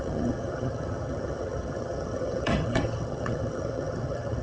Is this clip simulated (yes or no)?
yes